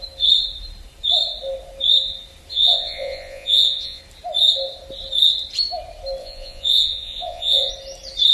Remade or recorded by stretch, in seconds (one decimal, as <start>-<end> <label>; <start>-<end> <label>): 0.0-2.5 recorded; 2.5-4.0 remade; 4.0-6.2 recorded; 6.2-7.7 remade; 7.7-8.3 recorded